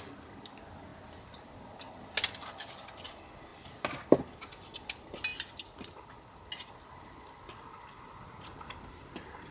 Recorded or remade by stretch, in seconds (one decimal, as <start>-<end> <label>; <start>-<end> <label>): 0.0-9.5 recorded